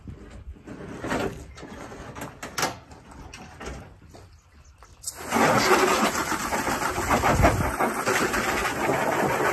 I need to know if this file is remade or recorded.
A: recorded